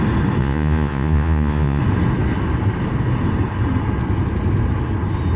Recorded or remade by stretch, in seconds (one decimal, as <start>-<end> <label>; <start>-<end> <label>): 0.0-0.4 recorded; 0.4-1.8 remade; 1.8-5.4 recorded